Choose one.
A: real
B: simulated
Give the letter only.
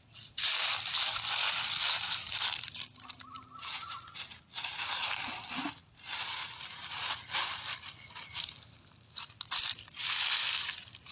A